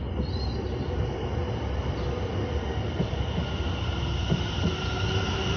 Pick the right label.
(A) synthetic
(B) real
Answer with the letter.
B